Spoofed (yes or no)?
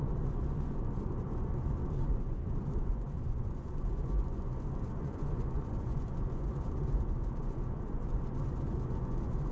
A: yes